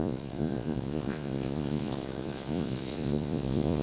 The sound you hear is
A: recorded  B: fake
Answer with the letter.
B